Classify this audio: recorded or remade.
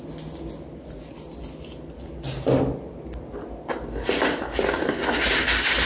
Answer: recorded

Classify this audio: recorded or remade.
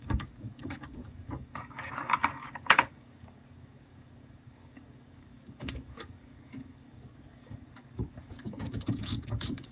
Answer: remade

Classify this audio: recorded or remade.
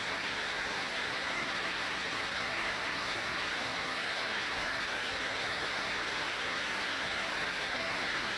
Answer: remade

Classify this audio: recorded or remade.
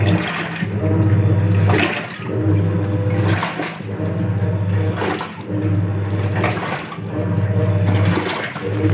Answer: recorded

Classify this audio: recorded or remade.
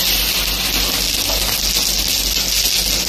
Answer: recorded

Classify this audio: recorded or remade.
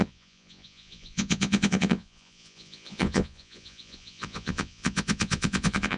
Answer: remade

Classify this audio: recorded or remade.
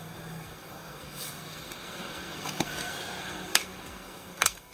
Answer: remade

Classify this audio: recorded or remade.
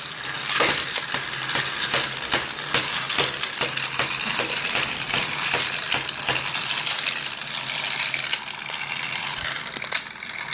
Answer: recorded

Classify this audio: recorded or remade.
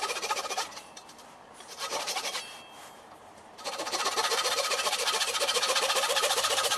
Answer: remade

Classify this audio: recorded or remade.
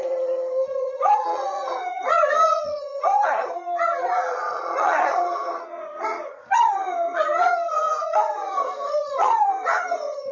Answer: remade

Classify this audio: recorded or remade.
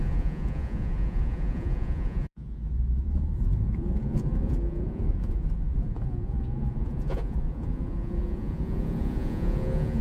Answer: remade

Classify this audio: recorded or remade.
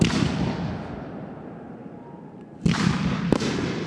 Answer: recorded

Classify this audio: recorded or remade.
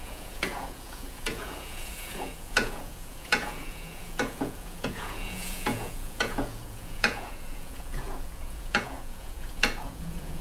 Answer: remade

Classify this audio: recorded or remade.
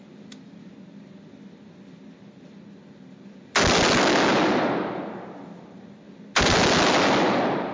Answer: recorded